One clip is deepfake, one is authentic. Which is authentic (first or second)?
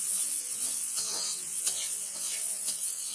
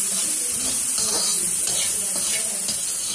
second